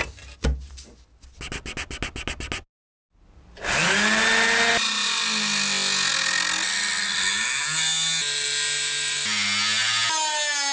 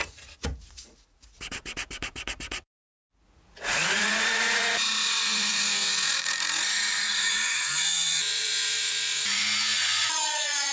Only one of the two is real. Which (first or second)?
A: first